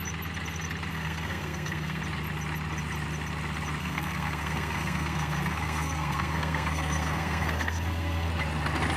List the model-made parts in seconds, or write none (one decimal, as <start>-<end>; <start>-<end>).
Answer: 0.9-2.0; 3.8-8.3